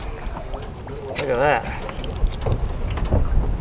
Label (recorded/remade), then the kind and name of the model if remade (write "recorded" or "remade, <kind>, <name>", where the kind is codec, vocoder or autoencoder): recorded